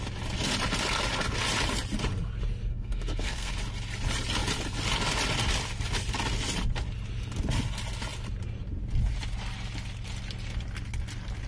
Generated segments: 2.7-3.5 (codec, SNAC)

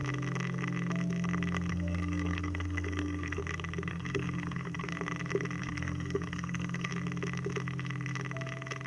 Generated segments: 1.7-3.4 (codec, SNAC); 3.9-4.9; 5.6-6.9